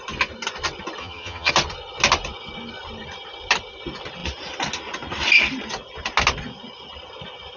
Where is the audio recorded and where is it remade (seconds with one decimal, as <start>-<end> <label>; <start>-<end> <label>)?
0.0-1.0 recorded; 1.0-1.5 remade; 1.5-7.6 recorded